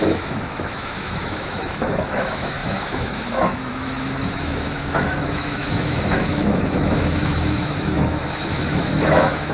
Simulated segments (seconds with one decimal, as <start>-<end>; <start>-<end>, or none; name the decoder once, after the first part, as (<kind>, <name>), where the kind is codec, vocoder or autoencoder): 0.0-9.5 (autoencoder, DAC-VAE)